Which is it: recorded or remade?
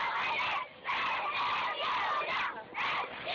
recorded